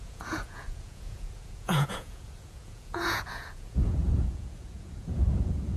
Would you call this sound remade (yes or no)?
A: yes